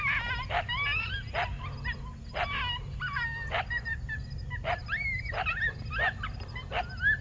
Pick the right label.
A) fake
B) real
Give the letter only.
B